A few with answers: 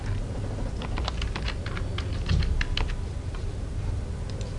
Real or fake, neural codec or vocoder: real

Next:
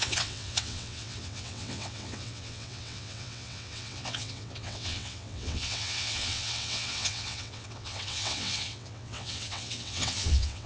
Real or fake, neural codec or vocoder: fake, vocoder, WaveNeXt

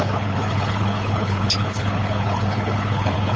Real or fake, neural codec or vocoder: fake, codec, HILCodec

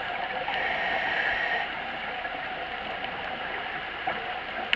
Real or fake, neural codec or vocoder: real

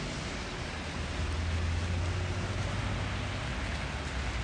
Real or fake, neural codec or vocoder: real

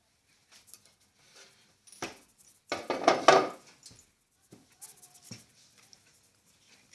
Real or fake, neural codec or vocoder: real